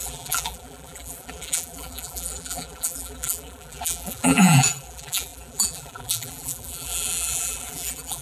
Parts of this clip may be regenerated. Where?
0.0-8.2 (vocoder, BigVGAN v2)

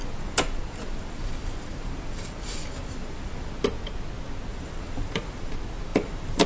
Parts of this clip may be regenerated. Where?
0.0-3.5 (vocoder, BigVGAN v2); 4.5-5.5; 5.9-6.5

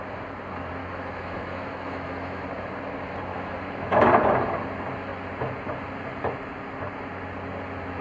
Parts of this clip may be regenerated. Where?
0.8-2.4 (autoencoder, DAC-VAE); 3.3-4.1

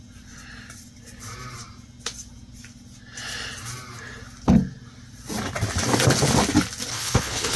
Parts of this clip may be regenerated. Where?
6.9-7.6 (codec, HILCodec)